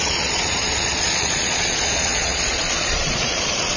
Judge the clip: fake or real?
fake